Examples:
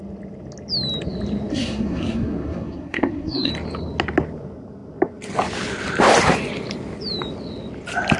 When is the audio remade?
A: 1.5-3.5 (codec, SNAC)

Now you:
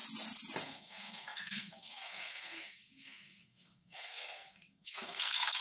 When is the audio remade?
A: 0.6-5.6 (codec, SNAC)

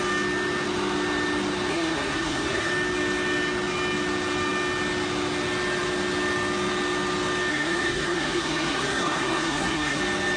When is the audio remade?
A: 1.7-2.7 (codec, SNAC); 7.5-10.0